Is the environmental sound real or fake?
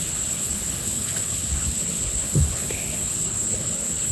fake